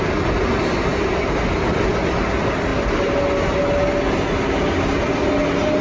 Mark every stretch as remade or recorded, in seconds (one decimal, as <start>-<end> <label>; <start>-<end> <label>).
0.0-5.8 recorded